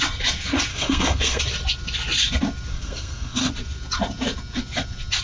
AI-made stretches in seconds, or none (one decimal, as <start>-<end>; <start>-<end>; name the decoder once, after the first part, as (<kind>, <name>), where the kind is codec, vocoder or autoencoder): 0.7-1.4 (codec, SNAC); 2.7-3.5